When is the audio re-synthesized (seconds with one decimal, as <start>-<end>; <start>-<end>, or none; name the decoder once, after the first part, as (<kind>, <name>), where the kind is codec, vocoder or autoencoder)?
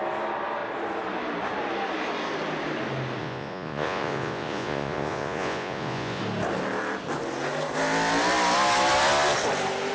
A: 3.2-6.2 (vocoder, Vocos)